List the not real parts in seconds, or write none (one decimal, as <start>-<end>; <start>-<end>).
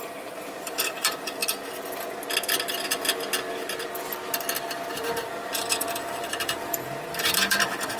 0.0-1.4; 4.9-8.0